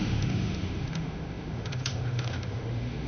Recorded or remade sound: remade